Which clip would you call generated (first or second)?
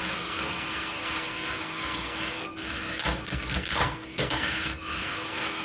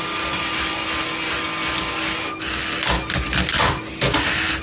first